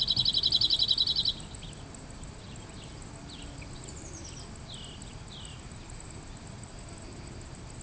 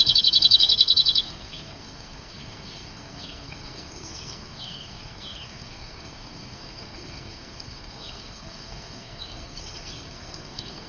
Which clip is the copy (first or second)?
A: second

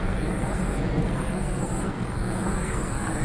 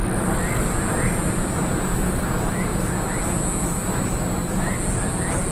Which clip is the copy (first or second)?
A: first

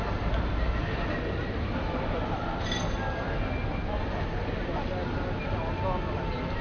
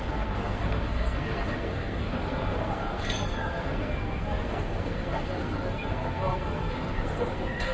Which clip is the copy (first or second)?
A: second